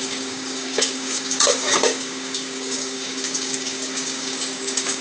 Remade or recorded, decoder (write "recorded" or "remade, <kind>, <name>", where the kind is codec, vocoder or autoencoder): remade, codec, DAC